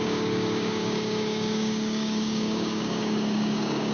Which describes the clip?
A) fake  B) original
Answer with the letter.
A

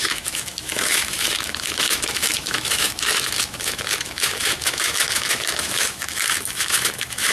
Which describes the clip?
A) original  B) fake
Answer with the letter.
B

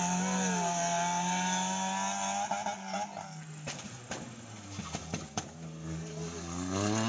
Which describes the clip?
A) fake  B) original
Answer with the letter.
B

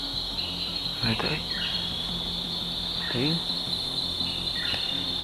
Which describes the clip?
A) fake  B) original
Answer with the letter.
B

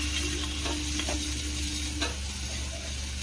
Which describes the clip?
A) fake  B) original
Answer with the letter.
B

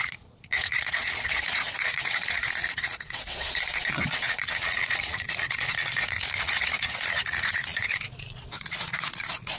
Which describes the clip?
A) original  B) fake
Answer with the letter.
B